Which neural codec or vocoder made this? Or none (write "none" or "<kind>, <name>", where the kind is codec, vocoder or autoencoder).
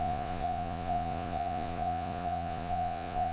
vocoder, Vocos